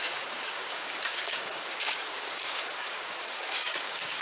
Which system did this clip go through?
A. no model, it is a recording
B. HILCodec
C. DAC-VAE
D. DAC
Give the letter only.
D